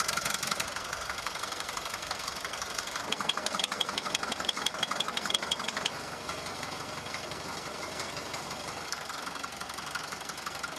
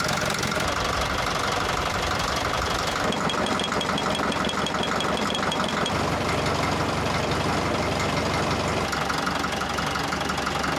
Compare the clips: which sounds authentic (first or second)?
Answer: second